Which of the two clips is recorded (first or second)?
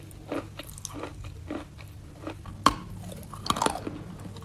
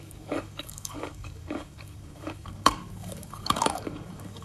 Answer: first